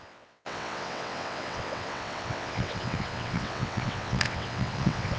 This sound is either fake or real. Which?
fake